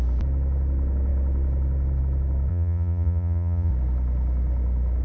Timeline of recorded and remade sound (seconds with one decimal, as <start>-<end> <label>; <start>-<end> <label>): 0.0-2.5 recorded; 2.5-3.7 remade; 3.7-5.0 recorded